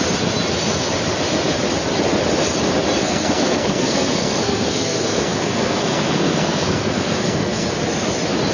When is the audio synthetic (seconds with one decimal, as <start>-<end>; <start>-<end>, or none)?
3.0-7.7